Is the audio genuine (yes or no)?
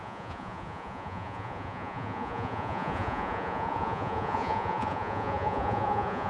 no